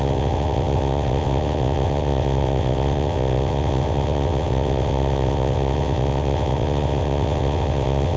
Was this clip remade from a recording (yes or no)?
yes